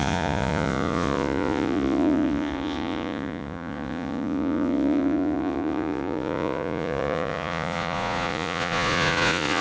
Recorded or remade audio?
remade